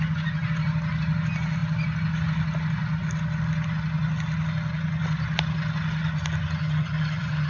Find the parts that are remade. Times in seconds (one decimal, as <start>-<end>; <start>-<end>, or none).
6.6-7.5